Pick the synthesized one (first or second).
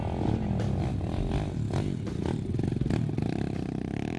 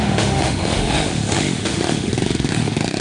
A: second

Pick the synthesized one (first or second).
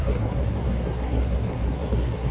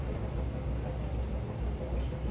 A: first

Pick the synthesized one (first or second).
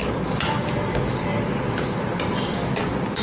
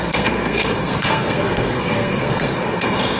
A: second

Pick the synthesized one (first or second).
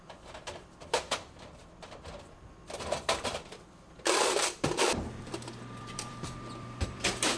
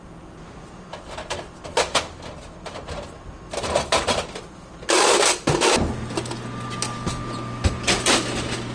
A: first